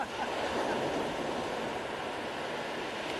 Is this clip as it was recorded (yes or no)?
yes